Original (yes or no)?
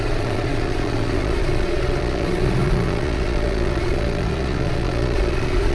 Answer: no